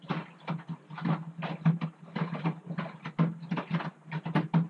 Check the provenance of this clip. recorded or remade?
recorded